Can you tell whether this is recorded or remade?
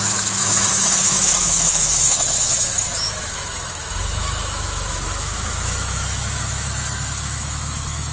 remade